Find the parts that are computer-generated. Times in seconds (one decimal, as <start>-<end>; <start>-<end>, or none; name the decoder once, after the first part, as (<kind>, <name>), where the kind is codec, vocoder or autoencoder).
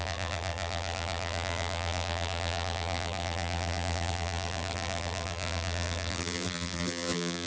0.0-7.5 (vocoder, BigVGAN v2)